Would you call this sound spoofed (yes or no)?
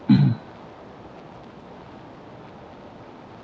no